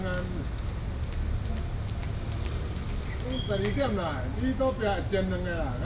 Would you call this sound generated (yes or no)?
no